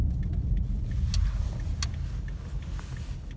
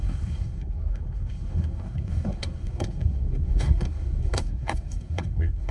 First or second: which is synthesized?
second